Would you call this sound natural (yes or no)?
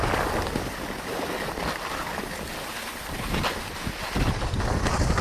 yes